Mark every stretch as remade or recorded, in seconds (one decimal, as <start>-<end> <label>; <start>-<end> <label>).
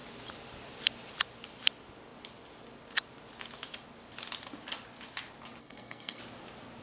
0.0-5.6 recorded; 5.6-6.2 remade; 6.2-6.8 recorded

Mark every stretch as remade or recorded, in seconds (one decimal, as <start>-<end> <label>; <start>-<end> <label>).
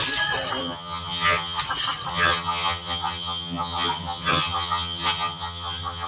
0.0-0.6 recorded; 0.6-1.6 remade; 1.6-2.1 recorded; 2.1-6.1 remade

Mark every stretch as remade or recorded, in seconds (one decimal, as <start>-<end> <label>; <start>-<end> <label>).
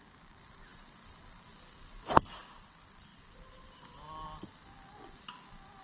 0.0-5.8 recorded